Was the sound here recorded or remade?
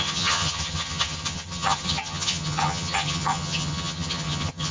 remade